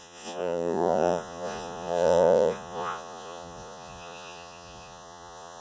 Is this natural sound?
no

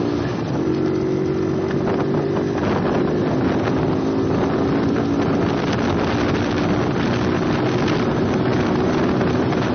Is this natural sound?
yes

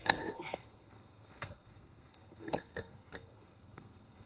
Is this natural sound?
no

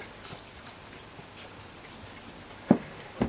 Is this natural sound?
yes